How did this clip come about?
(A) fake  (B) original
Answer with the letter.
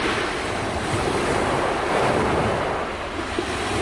B